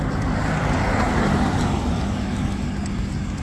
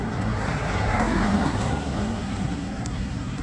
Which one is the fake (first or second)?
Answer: second